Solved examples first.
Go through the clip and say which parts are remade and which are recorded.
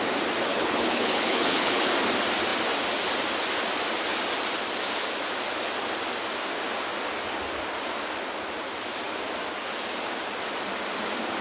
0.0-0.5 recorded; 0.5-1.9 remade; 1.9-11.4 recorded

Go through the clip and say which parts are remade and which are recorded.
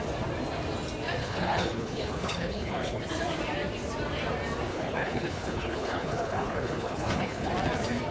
0.0-1.2 recorded; 1.2-3.0 remade; 3.0-4.7 recorded; 4.7-7.5 remade; 7.5-8.1 recorded